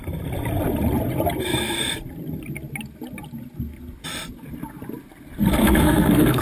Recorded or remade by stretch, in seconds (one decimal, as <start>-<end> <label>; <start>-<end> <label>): 0.0-5.6 recorded; 5.6-6.4 remade